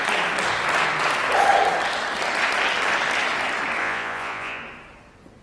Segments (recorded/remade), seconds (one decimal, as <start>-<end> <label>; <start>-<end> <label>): 0.0-3.8 recorded; 3.8-4.6 remade; 4.6-5.4 recorded